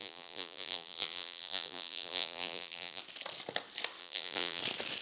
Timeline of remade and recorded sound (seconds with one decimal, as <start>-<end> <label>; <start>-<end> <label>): 0.0-3.0 remade; 3.0-4.0 recorded; 4.0-4.6 remade; 4.6-5.0 recorded